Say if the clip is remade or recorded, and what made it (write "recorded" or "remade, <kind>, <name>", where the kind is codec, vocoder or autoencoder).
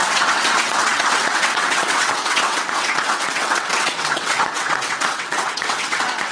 remade, vocoder, WaveNeXt